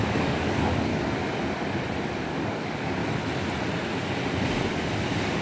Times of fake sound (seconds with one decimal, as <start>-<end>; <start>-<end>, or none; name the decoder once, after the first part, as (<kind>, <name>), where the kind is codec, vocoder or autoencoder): 0.0-0.9 (codec, DAC); 2.2-3.0; 4.7-5.4